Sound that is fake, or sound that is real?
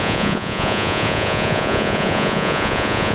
fake